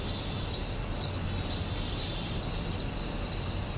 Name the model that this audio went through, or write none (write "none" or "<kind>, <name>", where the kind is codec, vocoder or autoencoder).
none